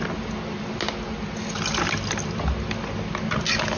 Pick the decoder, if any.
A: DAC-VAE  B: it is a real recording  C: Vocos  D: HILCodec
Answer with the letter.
B